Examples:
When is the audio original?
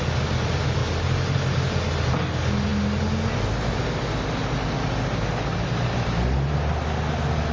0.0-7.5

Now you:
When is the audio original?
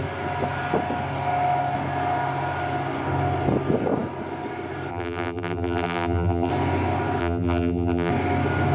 0.0-4.9; 6.5-7.2; 8.1-8.7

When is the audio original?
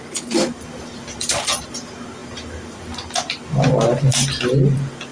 none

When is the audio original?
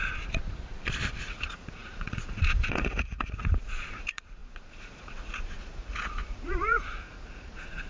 0.0-1.2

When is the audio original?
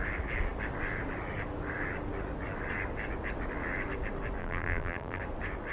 0.0-4.4; 5.2-5.7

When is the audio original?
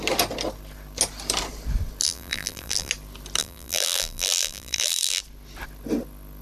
0.0-2.0; 2.9-3.4; 5.2-6.4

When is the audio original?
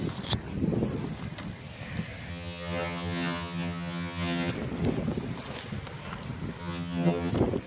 0.0-2.3; 4.5-6.6; 7.3-7.7